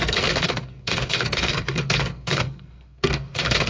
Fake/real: fake